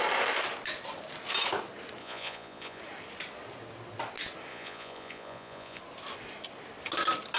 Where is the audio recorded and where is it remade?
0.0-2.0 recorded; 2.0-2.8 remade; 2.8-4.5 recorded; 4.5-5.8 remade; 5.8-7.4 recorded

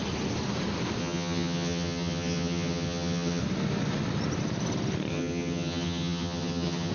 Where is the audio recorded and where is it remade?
0.0-1.0 recorded; 1.0-3.4 remade; 3.4-5.1 recorded; 5.1-6.9 remade

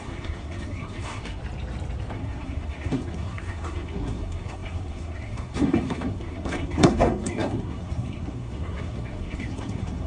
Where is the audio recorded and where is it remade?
0.0-1.4 remade; 1.4-2.1 recorded; 2.1-10.1 remade

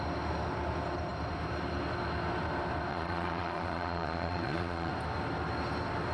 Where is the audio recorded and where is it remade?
0.0-2.9 recorded; 2.9-4.9 remade; 4.9-6.1 recorded

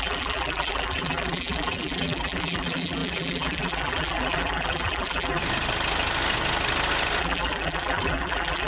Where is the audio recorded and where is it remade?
0.0-5.4 remade; 5.4-7.2 recorded; 7.2-8.7 remade